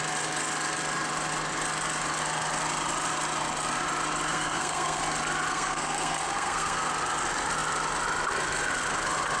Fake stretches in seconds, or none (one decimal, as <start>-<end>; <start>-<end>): 4.3-5.0; 5.5-6.9